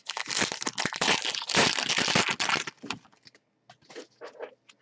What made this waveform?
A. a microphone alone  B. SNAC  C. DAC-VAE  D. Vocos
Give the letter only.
A